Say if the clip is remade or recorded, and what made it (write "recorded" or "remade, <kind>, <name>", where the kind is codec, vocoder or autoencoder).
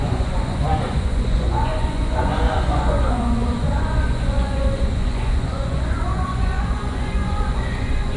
remade, vocoder, Vocos